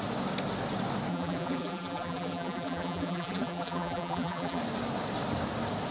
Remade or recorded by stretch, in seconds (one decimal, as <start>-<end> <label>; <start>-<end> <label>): 0.0-1.1 recorded; 1.1-4.6 remade; 4.6-5.9 recorded